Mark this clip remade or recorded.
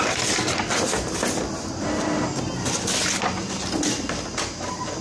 recorded